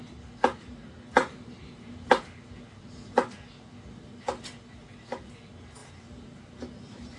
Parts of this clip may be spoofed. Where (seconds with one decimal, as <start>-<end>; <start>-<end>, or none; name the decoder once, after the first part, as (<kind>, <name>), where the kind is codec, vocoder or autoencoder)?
1.2-2.1 (vocoder, BigVGAN v2)